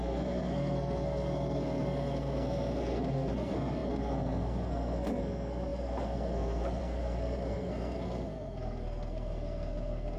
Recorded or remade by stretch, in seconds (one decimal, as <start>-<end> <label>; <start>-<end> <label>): 0.0-10.2 remade